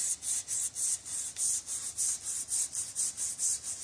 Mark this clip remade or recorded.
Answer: recorded